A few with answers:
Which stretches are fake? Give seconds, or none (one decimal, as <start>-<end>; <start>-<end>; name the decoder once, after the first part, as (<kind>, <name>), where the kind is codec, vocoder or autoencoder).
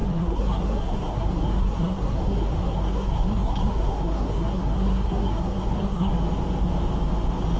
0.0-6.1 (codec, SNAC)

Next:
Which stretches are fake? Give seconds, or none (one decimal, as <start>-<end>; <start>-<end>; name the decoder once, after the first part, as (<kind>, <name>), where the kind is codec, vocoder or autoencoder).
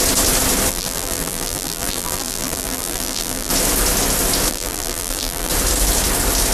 0.7-3.5 (vocoder, BigVGAN v2); 4.5-5.5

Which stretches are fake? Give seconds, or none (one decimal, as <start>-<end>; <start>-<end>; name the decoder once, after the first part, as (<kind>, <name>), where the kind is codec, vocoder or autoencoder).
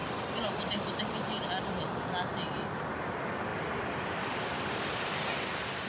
3.0-5.9 (vocoder, BigVGAN v2)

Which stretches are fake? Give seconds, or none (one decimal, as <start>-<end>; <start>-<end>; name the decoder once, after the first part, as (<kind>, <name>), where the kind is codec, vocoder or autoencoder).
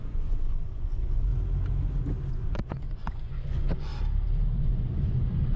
0.0-1.3 (vocoder, Vocos); 2.3-3.9; 4.6-5.6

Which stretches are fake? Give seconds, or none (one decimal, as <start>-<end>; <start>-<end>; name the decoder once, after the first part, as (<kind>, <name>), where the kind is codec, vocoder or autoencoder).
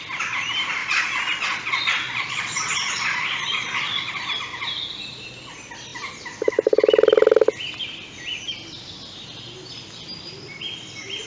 0.8-4.1 (vocoder, Vocos)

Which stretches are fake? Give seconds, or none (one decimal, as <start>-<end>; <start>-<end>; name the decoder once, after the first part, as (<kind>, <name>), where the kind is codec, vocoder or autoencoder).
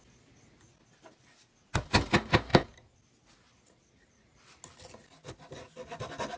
none